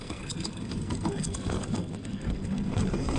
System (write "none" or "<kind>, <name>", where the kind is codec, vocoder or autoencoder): codec, SNAC